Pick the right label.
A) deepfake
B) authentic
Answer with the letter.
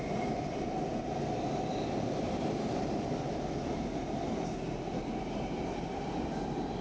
B